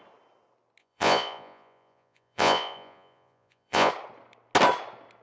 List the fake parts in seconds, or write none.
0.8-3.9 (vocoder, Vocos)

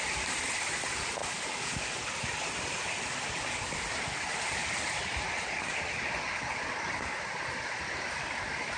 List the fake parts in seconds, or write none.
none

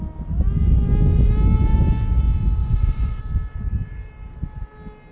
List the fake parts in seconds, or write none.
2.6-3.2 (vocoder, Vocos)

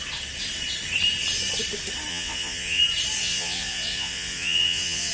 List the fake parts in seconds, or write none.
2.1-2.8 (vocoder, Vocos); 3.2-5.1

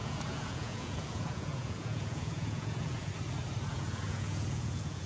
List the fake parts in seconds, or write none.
0.0-3.1 (vocoder, Vocos); 3.7-5.1

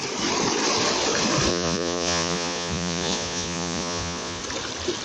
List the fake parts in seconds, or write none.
1.5-4.4 (vocoder, Vocos)